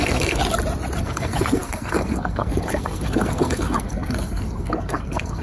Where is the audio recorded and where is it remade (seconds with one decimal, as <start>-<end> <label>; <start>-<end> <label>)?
0.0-0.4 remade; 0.4-1.0 recorded; 1.0-5.4 remade

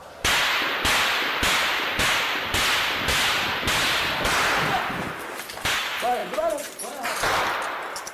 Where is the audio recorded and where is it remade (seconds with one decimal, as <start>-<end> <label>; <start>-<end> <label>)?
0.0-8.1 recorded

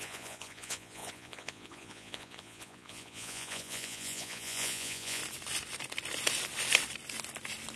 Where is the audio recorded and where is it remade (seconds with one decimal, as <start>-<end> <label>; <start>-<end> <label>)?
0.0-5.2 remade; 5.2-7.8 recorded

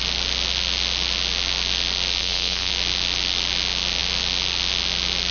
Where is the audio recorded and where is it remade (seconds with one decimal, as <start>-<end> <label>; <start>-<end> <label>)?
0.0-2.2 recorded; 2.2-2.7 remade; 2.7-5.3 recorded

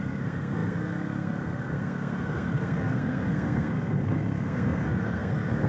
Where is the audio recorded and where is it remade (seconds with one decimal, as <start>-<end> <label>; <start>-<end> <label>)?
0.0-5.7 remade

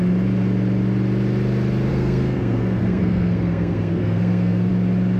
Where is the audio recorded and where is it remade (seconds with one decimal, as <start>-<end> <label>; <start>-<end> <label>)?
0.0-1.9 recorded; 1.9-4.7 remade; 4.7-5.2 recorded

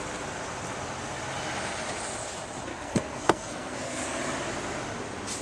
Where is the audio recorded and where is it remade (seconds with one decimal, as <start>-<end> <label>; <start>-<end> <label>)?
0.0-2.7 recorded; 2.7-4.2 remade; 4.2-5.4 recorded